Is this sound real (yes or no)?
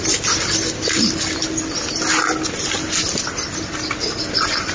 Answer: yes